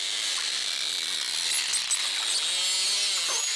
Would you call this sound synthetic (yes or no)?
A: no